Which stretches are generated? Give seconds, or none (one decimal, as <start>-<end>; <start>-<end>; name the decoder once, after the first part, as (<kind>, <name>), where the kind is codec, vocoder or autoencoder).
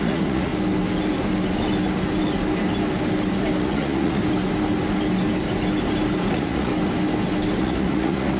0.0-0.5 (vocoder, Vocos); 3.6-4.2; 6.3-6.7; 7.6-8.4